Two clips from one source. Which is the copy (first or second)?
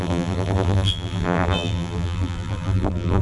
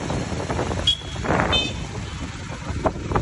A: first